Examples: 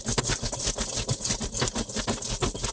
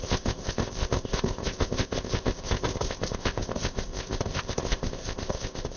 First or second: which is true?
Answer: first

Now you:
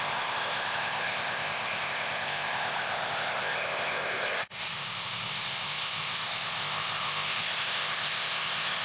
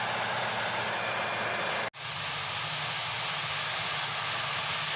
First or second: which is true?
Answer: second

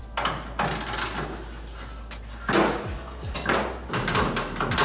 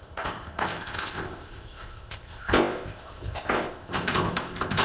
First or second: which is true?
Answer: first